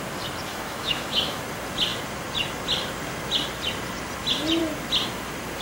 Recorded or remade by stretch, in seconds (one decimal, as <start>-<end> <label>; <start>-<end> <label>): 0.0-0.5 recorded; 0.5-1.4 remade; 1.4-5.6 recorded